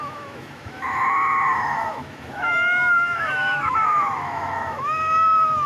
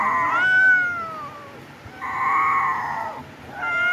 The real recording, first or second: second